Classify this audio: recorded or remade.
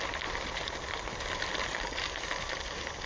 remade